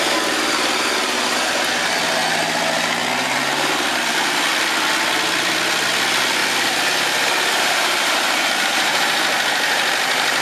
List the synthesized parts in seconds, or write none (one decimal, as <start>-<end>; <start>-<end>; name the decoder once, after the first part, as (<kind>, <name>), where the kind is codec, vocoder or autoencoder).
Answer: 7.5-10.4 (vocoder, BigVGAN v2)